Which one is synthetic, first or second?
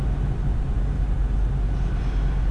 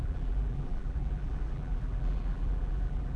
second